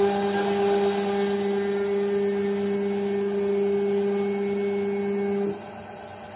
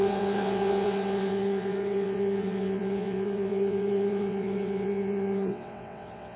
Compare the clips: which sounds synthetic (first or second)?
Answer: second